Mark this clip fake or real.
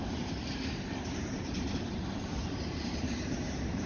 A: fake